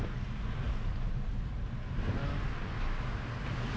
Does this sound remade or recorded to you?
recorded